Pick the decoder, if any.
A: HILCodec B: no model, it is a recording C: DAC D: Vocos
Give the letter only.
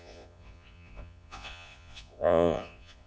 D